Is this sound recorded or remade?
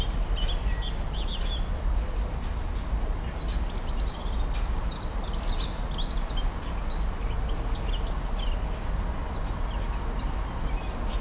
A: recorded